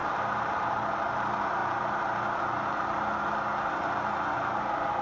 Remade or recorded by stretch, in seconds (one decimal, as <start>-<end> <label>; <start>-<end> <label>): 0.0-5.0 recorded